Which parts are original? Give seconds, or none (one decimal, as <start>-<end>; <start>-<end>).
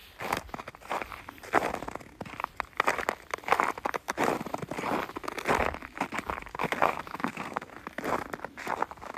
0.0-6.5; 7.7-9.2